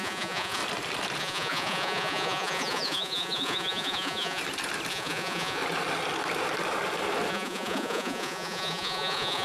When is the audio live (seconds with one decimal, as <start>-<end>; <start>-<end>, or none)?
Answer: 0.6-1.2; 4.4-4.9; 5.6-7.3